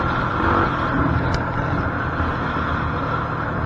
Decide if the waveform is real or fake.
real